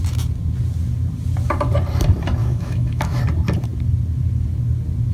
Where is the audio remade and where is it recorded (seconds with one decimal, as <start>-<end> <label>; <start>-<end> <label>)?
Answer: 0.0-2.4 recorded; 2.4-3.2 remade; 3.2-5.1 recorded